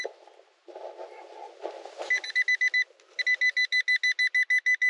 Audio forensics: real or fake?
real